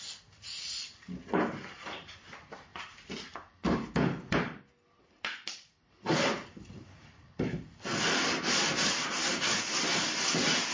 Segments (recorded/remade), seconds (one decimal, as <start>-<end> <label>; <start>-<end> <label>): 0.0-10.7 recorded